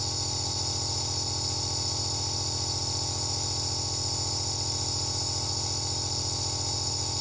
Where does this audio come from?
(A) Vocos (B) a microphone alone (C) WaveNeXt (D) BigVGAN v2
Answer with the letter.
B